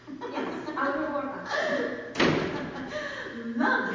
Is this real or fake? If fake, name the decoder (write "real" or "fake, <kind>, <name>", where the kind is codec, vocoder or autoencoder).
real